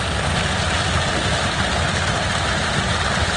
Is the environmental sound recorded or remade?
recorded